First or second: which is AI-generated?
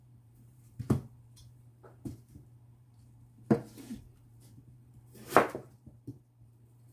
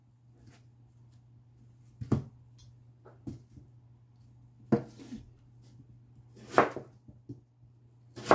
first